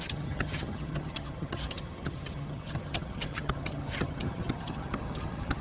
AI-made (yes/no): yes